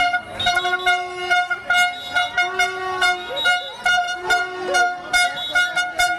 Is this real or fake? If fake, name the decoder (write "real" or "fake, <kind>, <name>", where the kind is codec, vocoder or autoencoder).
real